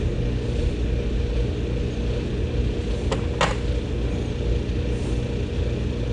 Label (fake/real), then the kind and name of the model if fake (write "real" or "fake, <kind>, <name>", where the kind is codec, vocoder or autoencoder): real